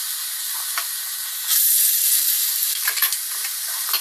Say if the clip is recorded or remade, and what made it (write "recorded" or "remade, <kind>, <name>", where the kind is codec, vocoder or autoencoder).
remade, vocoder, BigVGAN v2